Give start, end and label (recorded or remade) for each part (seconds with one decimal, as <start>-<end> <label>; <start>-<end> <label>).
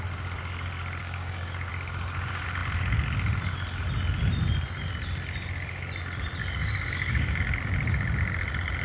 0.0-1.0 recorded; 1.0-1.7 remade; 1.7-6.4 recorded; 6.4-7.4 remade; 7.4-8.8 recorded